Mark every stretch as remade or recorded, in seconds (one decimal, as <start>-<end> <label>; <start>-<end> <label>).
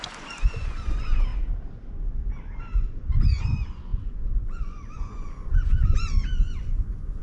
0.0-1.3 remade; 1.3-2.8 recorded; 2.8-7.2 remade